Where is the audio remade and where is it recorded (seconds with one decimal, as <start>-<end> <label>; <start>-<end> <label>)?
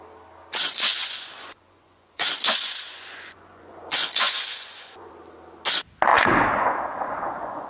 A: 0.0-0.9 recorded; 0.9-5.1 remade; 5.1-6.1 recorded; 6.1-7.7 remade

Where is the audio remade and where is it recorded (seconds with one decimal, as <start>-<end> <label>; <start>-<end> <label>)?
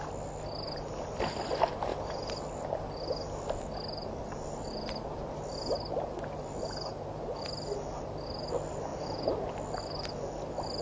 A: 0.0-8.9 recorded; 8.9-9.5 remade; 9.5-10.8 recorded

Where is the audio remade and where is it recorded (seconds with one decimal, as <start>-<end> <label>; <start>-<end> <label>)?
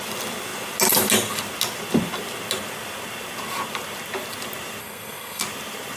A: 0.0-4.8 recorded; 4.8-5.4 remade; 5.4-6.0 recorded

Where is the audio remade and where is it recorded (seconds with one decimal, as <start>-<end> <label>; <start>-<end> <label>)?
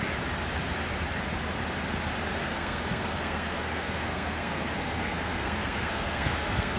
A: 0.0-2.4 recorded; 2.4-6.8 remade